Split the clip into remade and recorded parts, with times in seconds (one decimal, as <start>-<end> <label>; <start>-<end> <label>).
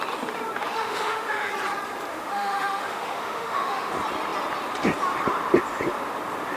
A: 0.0-0.6 recorded; 0.6-1.5 remade; 1.5-2.1 recorded; 2.1-3.9 remade; 3.9-6.6 recorded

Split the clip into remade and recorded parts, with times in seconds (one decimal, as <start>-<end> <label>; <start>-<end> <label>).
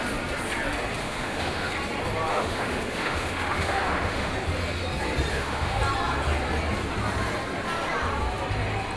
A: 0.0-1.0 recorded; 1.0-1.7 remade; 1.7-2.3 recorded; 2.3-4.3 remade; 4.3-5.3 recorded; 5.3-5.8 remade; 5.8-9.0 recorded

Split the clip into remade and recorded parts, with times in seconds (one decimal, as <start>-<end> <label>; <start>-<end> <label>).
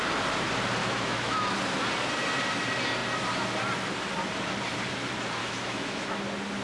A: 0.0-0.8 recorded; 0.8-1.5 remade; 1.5-5.4 recorded; 5.4-6.1 remade; 6.1-6.6 recorded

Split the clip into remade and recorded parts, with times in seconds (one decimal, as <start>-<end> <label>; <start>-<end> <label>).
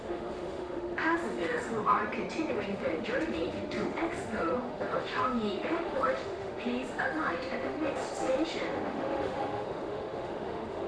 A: 0.0-2.0 remade; 2.0-2.5 recorded; 2.5-10.9 remade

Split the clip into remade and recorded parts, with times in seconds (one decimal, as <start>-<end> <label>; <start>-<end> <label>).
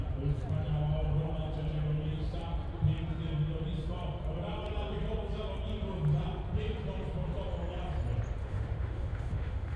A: 0.0-8.4 recorded; 8.4-9.8 remade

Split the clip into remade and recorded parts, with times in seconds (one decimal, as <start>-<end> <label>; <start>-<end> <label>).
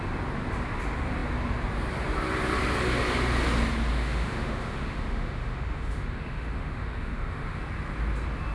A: 0.0-3.9 recorded; 3.9-7.6 remade; 7.6-8.5 recorded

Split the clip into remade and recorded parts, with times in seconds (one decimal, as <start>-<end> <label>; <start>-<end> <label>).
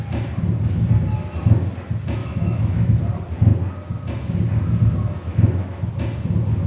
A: 0.0-2.2 recorded; 2.2-3.0 remade; 3.0-5.3 recorded; 5.3-5.9 remade; 5.9-6.7 recorded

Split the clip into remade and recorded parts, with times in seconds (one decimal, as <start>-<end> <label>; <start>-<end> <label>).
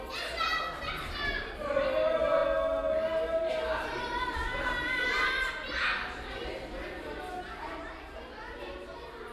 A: 0.0-9.3 recorded